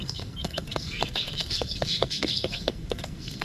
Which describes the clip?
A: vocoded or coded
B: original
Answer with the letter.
A